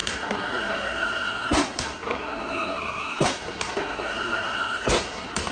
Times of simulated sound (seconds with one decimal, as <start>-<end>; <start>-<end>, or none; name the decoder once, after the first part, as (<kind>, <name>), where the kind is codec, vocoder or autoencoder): 0.0-5.5 (codec, SNAC)